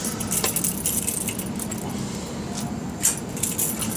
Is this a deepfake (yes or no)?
no